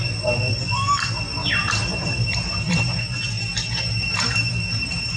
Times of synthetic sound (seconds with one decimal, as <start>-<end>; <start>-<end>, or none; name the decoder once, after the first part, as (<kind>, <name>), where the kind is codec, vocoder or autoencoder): 1.4-3.0 (vocoder, BigVGAN v2); 3.5-5.2